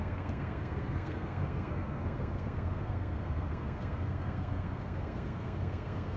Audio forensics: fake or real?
fake